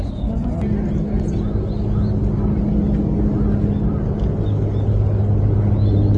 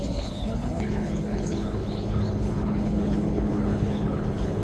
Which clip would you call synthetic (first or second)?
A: second